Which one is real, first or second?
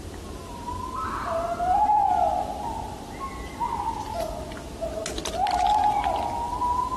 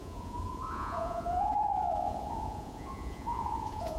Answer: first